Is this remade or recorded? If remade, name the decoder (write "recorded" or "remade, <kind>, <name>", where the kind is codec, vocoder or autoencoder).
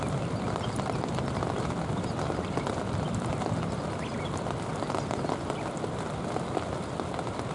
recorded